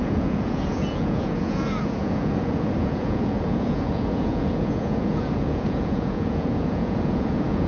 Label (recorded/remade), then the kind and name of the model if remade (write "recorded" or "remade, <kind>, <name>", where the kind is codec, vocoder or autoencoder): remade, vocoder, Vocos